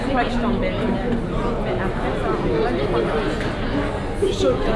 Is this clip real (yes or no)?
yes